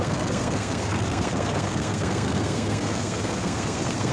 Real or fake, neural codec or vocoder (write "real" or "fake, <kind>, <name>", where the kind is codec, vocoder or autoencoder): fake, codec, SNAC